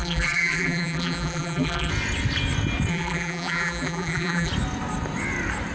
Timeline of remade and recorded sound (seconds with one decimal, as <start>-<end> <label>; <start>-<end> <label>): 0.0-1.9 remade; 1.9-2.9 recorded; 2.9-4.5 remade; 4.5-5.7 recorded